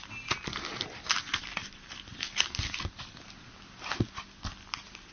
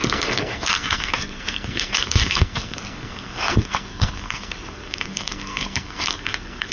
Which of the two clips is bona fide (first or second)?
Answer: first